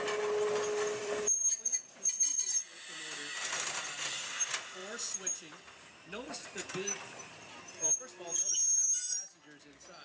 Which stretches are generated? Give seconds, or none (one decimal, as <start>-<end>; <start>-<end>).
1.0-1.5; 4.8-7.6; 8.3-9.2